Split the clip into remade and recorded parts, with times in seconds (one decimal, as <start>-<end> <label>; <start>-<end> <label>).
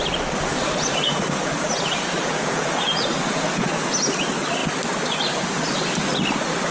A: 0.0-2.2 recorded; 2.2-3.7 remade; 3.7-6.7 recorded